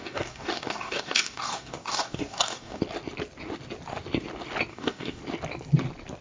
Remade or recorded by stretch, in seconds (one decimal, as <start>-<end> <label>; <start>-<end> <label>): 0.0-2.8 remade; 2.8-4.7 recorded; 4.7-5.2 remade; 5.2-6.2 recorded